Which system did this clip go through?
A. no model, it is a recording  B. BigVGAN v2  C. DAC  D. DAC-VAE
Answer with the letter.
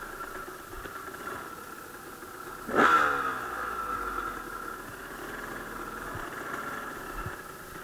A